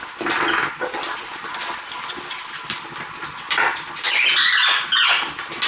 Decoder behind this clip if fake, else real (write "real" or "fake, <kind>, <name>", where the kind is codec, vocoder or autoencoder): real